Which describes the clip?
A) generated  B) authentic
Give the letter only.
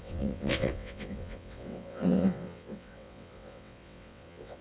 A